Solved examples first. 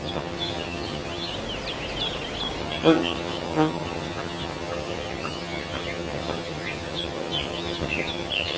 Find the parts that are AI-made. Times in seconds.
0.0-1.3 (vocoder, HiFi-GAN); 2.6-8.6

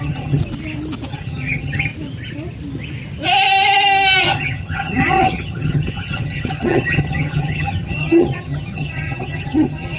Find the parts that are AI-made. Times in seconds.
0.0-0.4 (vocoder, HiFi-GAN); 1.1-1.9; 4.2-10.0

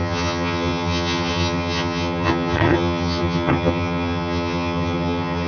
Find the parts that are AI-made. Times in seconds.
0.0-5.5 (vocoder, HiFi-GAN)

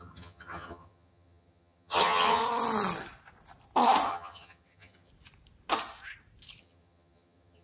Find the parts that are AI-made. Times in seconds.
0.0-2.4 (vocoder, HiFi-GAN); 4.1-5.1; 6.6-7.6

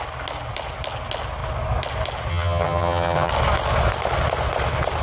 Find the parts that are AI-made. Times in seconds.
2.3-3.3 (vocoder, HiFi-GAN)

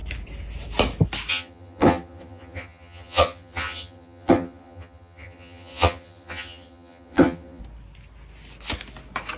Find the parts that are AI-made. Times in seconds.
1.3-7.6 (vocoder, HiFi-GAN)